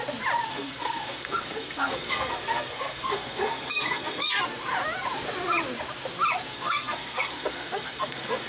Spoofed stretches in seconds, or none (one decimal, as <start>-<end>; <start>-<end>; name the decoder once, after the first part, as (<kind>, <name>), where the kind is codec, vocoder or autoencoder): 0.5-4.4 (codec, SNAC); 6.5-8.5